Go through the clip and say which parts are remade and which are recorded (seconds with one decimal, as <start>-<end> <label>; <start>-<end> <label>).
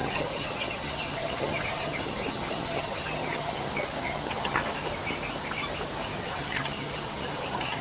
0.0-4.6 remade; 4.6-6.2 recorded; 6.2-7.8 remade